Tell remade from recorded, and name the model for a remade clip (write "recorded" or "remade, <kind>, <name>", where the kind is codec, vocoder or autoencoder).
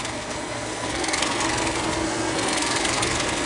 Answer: remade, codec, SNAC